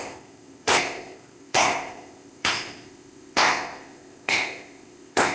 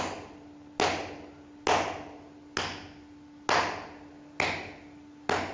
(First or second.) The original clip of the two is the second